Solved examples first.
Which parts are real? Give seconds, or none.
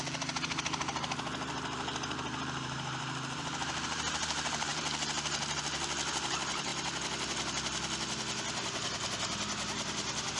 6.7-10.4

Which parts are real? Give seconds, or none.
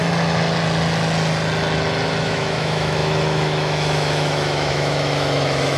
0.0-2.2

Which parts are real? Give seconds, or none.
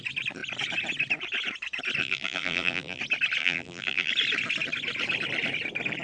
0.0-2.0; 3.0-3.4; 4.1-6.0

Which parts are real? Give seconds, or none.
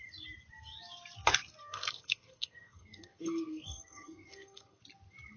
0.0-1.6; 4.8-5.4